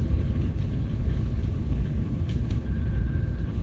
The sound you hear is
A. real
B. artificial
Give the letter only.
B